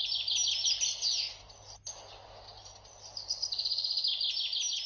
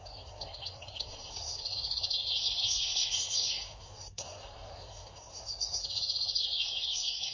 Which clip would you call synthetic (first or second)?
second